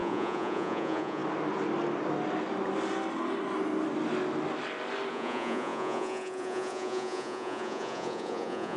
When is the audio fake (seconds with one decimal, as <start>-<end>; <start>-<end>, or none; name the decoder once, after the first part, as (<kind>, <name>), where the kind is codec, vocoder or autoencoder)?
0.0-1.2 (vocoder, Vocos); 5.1-8.8